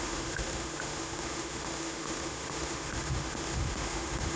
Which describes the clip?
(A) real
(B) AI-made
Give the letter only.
B